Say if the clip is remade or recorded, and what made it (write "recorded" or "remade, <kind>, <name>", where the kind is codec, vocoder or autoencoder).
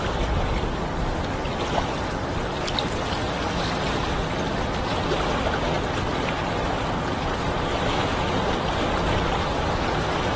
remade, vocoder, BigVGAN v2